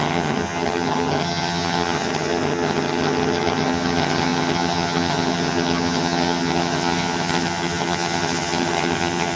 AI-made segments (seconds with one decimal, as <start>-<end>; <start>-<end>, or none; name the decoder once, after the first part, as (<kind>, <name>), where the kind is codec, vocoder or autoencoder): 0.0-9.4 (vocoder, HiFi-GAN)